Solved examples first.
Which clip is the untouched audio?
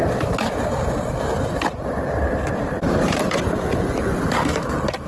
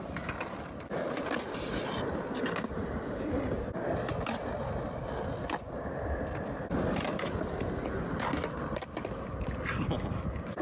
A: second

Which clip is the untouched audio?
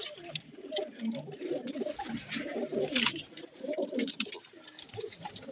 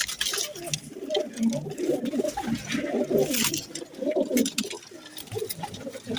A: second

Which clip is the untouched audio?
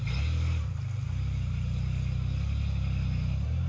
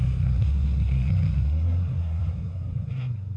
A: first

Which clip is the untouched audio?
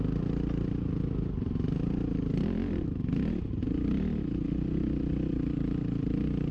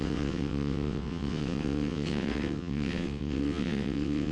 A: first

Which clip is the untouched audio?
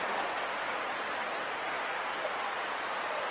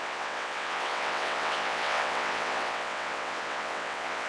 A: first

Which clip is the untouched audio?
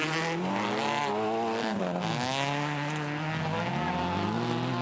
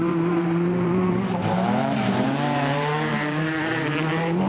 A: first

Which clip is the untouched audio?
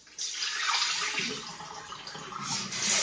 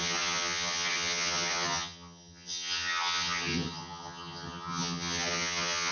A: first